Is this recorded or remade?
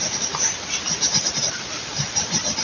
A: recorded